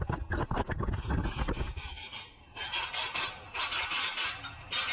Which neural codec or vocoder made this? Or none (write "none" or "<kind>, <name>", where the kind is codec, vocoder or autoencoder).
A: none